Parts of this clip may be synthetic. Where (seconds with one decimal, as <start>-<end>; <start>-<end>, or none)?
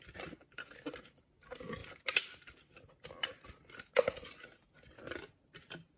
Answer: none